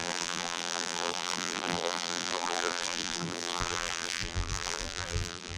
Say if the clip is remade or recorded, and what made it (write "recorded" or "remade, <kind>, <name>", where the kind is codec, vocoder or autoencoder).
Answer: remade, vocoder, BigVGAN v2